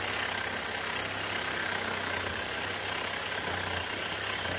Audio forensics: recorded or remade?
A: recorded